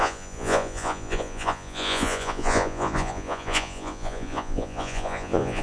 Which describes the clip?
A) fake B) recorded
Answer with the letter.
A